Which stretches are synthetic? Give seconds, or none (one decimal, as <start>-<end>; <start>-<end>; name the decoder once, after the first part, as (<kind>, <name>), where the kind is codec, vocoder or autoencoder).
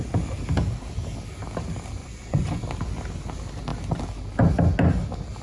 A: 2.0-2.6 (vocoder, Vocos)